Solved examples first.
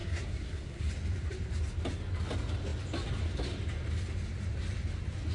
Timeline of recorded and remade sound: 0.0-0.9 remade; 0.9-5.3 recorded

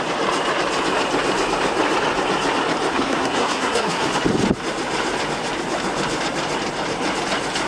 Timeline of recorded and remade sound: 0.0-2.9 recorded; 2.9-4.1 remade; 4.1-7.7 recorded

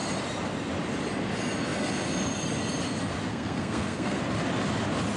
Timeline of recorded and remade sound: 0.0-3.3 recorded; 3.3-4.2 remade; 4.2-5.2 recorded